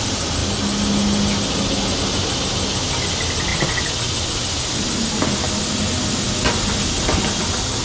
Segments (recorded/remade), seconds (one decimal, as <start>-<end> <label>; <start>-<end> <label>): 0.0-7.8 recorded